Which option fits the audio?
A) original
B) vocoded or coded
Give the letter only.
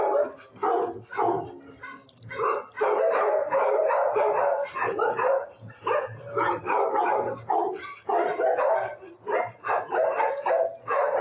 A